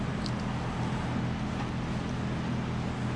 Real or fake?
real